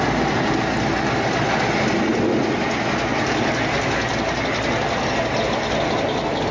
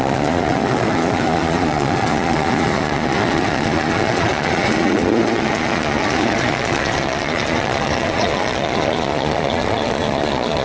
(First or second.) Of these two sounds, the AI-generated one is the second